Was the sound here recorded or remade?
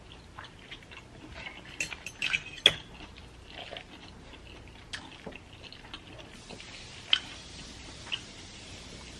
recorded